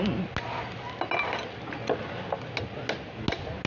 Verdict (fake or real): real